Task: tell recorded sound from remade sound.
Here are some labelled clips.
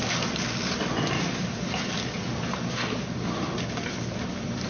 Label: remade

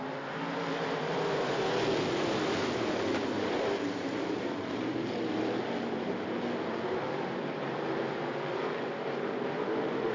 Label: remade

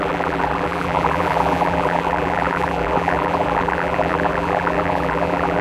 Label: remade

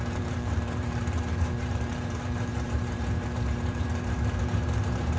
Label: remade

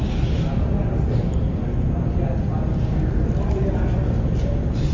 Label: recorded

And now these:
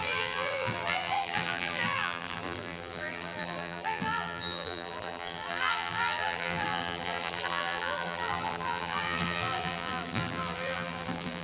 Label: remade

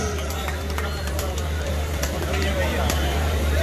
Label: remade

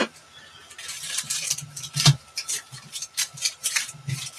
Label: remade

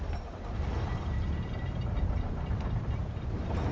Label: remade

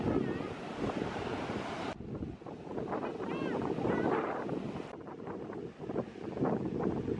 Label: recorded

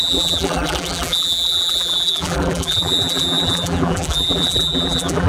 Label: remade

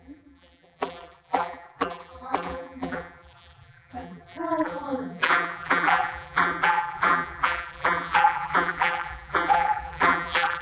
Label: remade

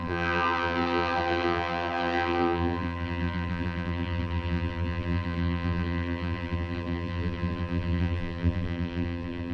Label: remade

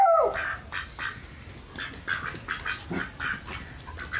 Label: recorded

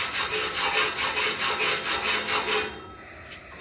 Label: recorded